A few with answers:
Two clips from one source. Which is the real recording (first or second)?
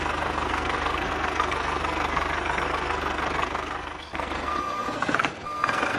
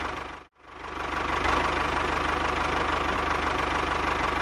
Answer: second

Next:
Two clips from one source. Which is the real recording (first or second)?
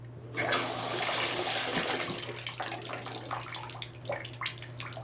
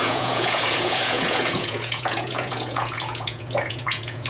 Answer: first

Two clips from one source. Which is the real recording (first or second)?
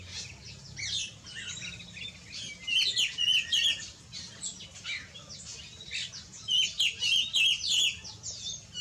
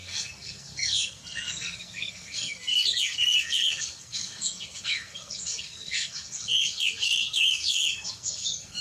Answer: first